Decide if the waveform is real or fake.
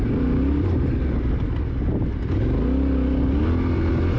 real